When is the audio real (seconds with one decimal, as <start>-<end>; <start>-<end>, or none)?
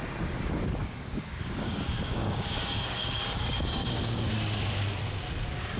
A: 0.0-0.8; 4.3-5.8